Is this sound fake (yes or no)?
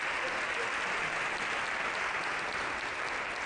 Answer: no